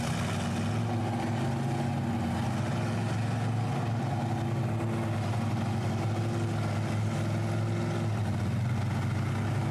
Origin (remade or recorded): recorded